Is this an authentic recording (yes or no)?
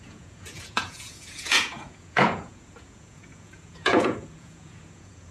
no